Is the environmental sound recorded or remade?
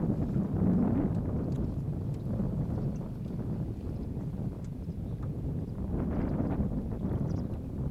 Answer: recorded